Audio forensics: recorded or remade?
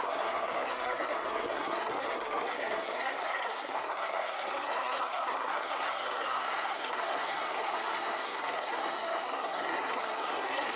remade